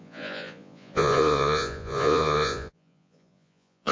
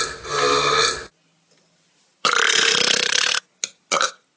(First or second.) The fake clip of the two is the first